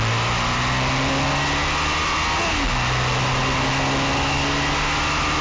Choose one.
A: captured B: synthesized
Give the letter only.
A